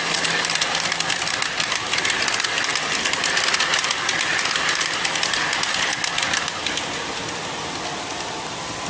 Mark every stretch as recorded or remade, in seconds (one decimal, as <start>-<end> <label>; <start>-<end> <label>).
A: 0.0-8.9 recorded